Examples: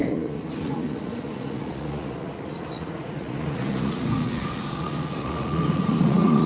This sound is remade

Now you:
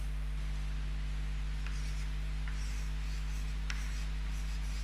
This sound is recorded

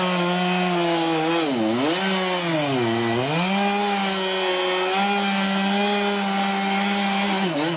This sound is recorded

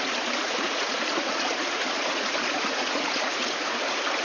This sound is remade